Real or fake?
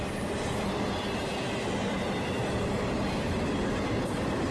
real